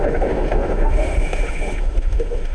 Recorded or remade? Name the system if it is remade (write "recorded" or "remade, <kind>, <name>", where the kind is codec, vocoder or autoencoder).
remade, autoencoder, DAC-VAE